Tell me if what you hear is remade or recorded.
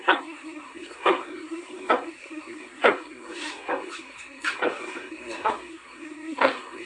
remade